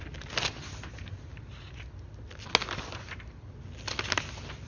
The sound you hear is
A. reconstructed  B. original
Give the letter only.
B